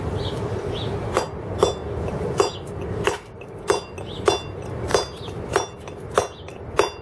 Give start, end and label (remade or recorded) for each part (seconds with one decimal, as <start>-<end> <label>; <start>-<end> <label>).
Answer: 0.0-7.0 recorded